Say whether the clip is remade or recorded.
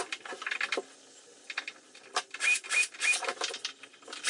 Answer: recorded